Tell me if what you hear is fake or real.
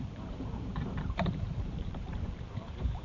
fake